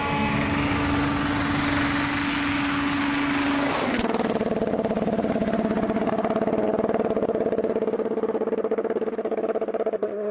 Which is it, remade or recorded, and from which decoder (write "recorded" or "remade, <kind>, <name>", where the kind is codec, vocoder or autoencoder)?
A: recorded